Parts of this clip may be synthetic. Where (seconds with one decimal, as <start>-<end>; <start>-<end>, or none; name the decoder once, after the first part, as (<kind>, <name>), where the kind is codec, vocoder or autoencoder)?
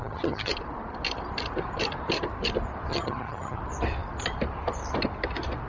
0.0-0.5 (vocoder, HiFi-GAN); 2.9-3.6